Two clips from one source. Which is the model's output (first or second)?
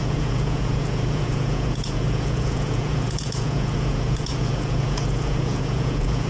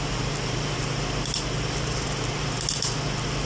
first